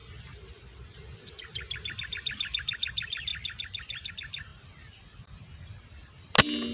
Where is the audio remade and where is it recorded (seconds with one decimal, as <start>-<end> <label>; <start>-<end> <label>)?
0.0-6.7 recorded